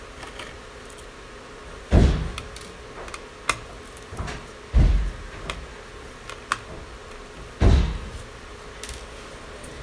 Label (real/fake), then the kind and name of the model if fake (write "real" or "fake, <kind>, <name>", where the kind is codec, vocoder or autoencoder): real